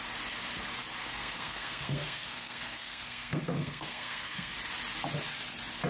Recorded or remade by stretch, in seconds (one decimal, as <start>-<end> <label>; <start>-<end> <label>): 0.0-1.0 recorded; 1.0-4.5 remade; 4.5-5.9 recorded

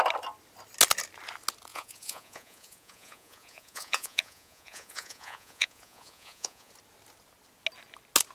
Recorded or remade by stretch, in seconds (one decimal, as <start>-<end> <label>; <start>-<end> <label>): 0.0-1.7 recorded; 1.7-6.7 remade; 6.7-8.3 recorded

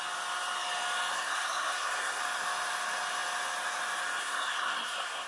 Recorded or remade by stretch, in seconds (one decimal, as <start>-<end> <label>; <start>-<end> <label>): 0.0-1.1 recorded; 1.1-2.2 remade; 2.2-4.2 recorded; 4.2-5.3 remade